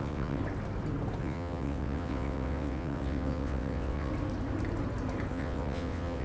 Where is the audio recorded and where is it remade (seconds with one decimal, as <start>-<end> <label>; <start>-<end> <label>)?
0.0-0.4 remade; 0.4-1.2 recorded; 1.2-4.1 remade; 4.1-5.3 recorded; 5.3-6.2 remade